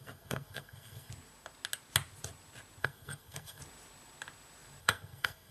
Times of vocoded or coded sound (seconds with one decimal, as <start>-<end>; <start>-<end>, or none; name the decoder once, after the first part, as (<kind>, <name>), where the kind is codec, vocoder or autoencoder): 0.0-1.1 (codec, SNAC); 2.8-3.6; 4.8-5.5